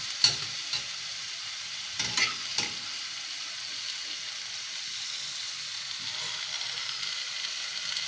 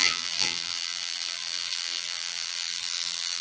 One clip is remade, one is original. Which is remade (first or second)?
second